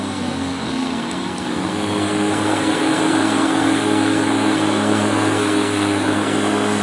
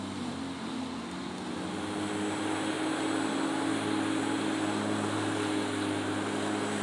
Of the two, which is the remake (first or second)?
first